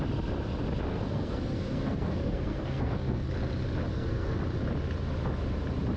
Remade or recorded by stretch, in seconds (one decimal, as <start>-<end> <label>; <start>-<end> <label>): 0.0-0.9 recorded; 0.9-3.3 remade; 3.3-3.9 recorded; 3.9-4.4 remade; 4.4-6.0 recorded